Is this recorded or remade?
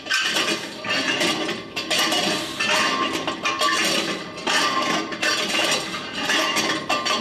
recorded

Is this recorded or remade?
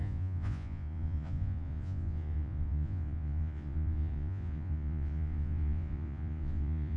remade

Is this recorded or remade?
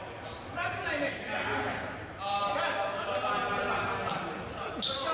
recorded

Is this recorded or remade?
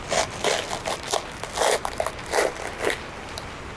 recorded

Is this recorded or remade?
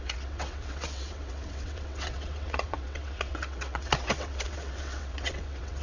remade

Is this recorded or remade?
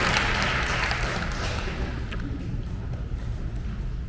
recorded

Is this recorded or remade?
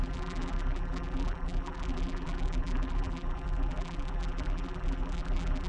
remade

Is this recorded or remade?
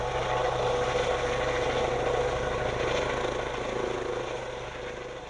recorded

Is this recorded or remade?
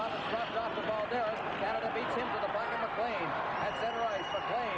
recorded